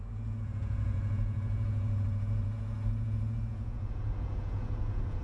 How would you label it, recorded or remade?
remade